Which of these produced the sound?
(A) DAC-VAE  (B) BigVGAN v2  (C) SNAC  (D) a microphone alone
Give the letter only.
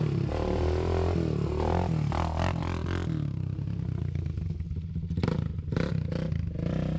D